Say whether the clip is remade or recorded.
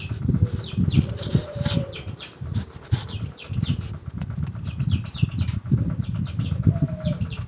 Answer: remade